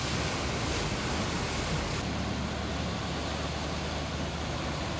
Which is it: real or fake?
real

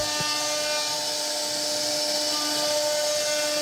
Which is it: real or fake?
real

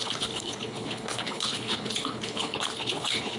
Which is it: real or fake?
fake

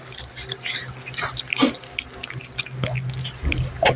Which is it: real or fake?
real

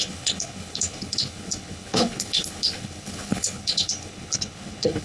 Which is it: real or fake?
fake